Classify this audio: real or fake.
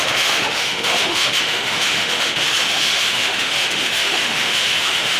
fake